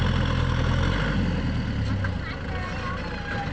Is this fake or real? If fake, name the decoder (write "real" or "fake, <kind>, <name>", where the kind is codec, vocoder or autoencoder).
real